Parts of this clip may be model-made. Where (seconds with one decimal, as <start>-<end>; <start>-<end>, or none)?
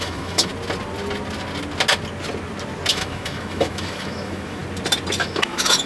0.0-0.5; 2.9-4.6; 5.2-5.9